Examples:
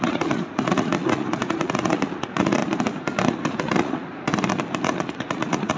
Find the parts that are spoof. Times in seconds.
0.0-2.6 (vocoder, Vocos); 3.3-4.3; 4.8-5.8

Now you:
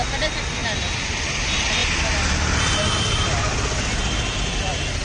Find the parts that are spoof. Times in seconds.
none

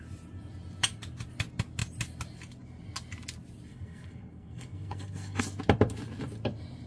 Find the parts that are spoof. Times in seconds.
3.7-5.4 (codec, SNAC)

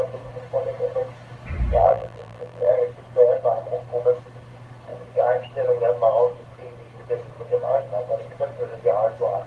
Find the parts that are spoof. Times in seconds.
1.8-2.7 (vocoder, BigVGAN v2)

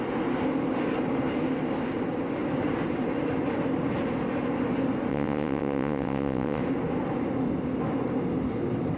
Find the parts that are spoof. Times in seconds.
5.1-6.6 (vocoder, WaveNeXt)

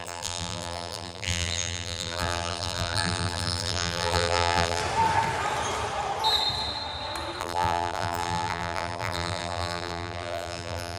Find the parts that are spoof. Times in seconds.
0.0-4.8 (vocoder, BigVGAN v2); 7.4-11.0

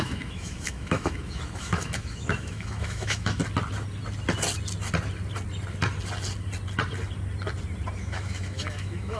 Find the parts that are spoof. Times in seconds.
0.0-3.4 (autoencoder, DAC-VAE); 8.0-9.2